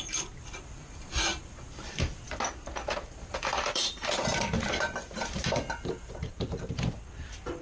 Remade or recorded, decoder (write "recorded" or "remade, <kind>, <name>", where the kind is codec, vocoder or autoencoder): remade, vocoder, BigVGAN v2